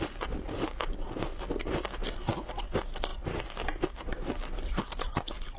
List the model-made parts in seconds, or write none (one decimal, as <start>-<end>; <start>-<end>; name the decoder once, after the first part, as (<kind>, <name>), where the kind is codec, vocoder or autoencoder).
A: none